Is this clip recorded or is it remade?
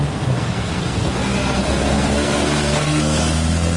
remade